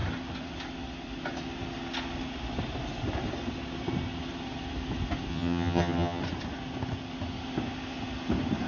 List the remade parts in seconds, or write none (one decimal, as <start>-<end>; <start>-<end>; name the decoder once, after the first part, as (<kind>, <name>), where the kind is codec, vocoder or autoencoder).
5.3-6.2 (vocoder, HiFi-GAN)